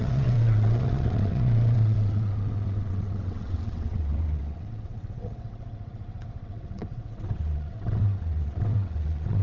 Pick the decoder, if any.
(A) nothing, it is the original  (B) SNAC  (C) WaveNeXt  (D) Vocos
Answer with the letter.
C